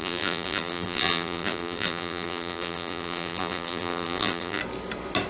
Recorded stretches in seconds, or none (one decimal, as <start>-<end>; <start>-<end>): 4.6-5.3